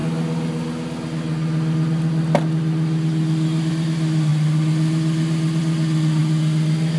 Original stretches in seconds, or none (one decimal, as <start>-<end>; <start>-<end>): 0.0-7.0